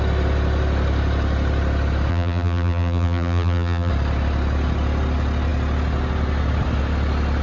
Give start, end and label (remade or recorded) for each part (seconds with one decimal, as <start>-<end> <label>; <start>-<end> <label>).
0.0-2.1 recorded; 2.1-3.9 remade; 3.9-7.4 recorded